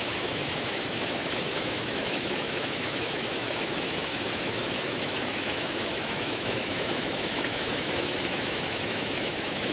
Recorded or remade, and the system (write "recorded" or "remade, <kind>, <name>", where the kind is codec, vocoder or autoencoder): remade, autoencoder, DAC-VAE